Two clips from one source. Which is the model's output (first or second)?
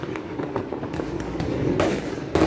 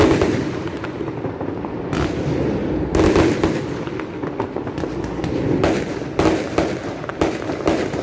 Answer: first